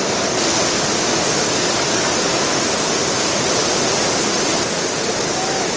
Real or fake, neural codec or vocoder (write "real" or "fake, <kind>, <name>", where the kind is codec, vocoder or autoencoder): real